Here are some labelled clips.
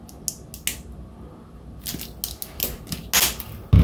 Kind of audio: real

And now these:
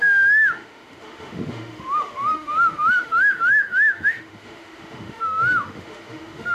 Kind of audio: fake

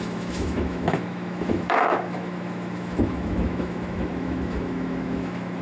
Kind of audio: fake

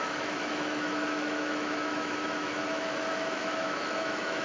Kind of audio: fake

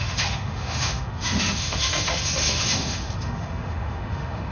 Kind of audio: fake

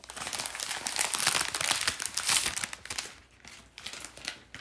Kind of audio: real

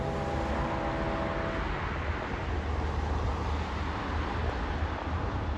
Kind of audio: real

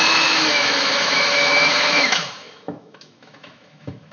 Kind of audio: fake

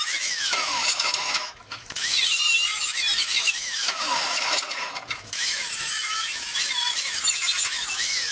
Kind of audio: fake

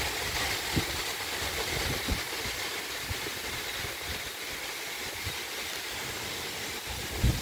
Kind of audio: real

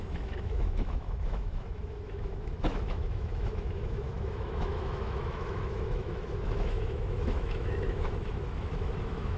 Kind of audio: fake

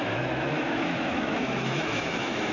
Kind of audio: fake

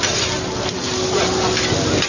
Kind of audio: real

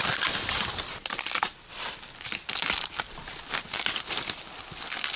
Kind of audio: real